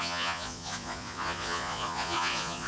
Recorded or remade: remade